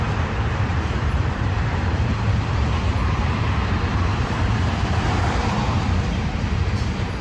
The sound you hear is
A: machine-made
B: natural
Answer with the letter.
A